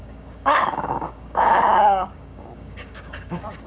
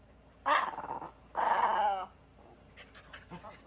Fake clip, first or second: first